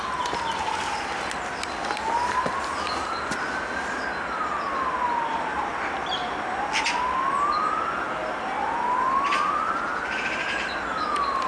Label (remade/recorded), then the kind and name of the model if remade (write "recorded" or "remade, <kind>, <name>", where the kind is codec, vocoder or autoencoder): recorded